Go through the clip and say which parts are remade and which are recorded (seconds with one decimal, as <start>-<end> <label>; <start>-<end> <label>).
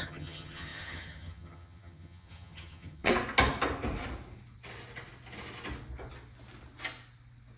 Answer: 0.0-3.1 remade; 3.1-7.6 recorded